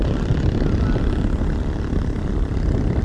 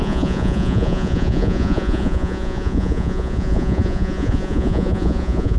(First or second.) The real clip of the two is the first